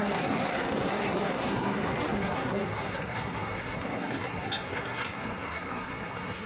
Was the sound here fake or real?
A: fake